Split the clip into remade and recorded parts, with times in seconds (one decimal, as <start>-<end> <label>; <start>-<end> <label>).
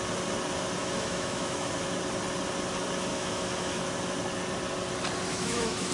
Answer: 0.0-0.8 recorded; 0.8-1.7 remade; 1.7-3.1 recorded; 3.1-3.8 remade; 3.8-5.3 recorded; 5.3-5.9 remade